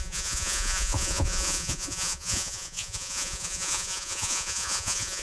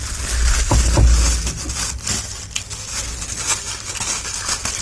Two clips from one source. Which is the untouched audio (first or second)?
second